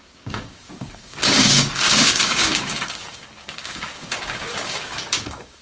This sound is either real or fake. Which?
fake